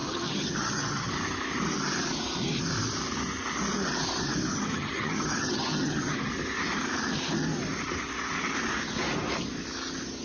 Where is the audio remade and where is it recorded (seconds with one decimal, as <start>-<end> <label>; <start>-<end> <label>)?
0.0-1.1 remade; 1.1-4.5 recorded; 4.5-6.3 remade; 6.3-10.2 recorded